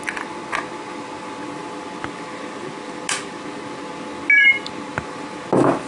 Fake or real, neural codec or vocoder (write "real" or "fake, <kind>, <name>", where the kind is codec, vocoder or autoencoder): real